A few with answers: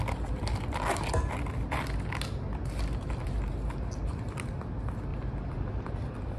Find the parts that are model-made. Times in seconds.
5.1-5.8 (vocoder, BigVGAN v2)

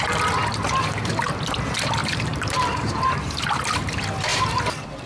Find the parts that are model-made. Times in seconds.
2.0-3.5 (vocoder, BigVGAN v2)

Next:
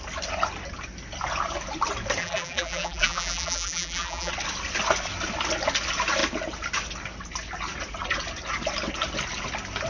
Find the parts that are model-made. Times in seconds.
2.2-4.3 (vocoder, BigVGAN v2)

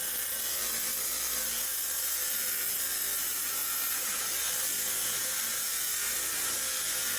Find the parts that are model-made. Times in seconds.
0.0-2.6 (vocoder, BigVGAN v2); 3.2-7.2

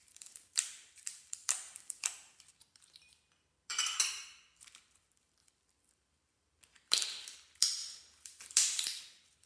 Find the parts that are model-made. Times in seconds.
0.0-9.5 (vocoder, BigVGAN v2)

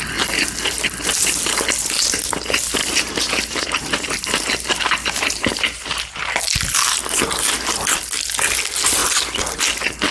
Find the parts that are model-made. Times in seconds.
2.8-6.4 (vocoder, BigVGAN v2)